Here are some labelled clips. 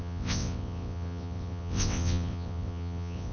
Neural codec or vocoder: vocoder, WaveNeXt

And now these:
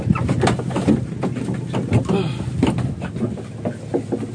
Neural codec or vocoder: none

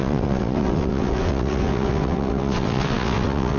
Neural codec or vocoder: vocoder, WaveNeXt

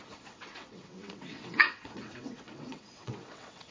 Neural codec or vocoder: vocoder, WaveNeXt